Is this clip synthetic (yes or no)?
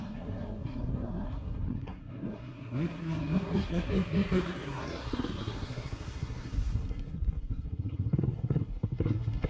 yes